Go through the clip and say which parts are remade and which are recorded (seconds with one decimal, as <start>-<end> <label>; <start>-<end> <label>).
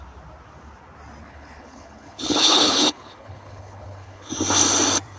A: 0.0-1.2 recorded; 1.2-4.3 remade; 4.3-5.2 recorded